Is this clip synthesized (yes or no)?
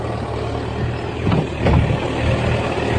no